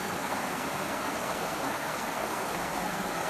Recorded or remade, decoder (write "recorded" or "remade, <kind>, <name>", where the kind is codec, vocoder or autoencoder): remade, codec, SNAC